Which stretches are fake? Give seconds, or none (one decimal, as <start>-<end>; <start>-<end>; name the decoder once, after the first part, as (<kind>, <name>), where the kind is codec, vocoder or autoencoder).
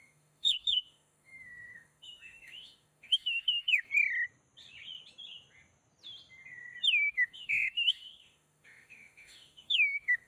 0.0-3.9 (autoencoder, DAC-VAE); 7.1-10.3